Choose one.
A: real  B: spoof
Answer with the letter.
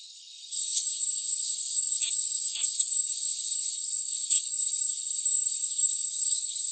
B